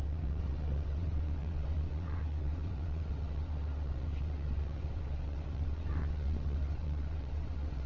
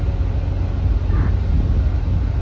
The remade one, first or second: first